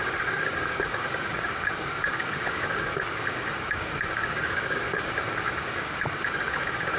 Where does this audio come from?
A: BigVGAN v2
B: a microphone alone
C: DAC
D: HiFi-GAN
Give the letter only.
C